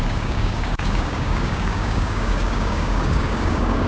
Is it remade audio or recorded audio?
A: remade